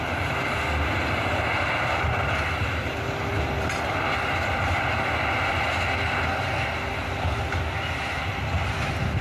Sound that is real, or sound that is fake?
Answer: real